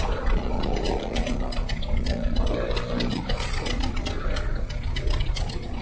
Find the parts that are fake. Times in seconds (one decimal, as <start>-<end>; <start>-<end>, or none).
0.0-2.5; 3.1-5.8